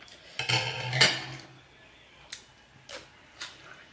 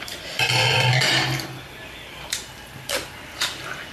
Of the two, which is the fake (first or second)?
second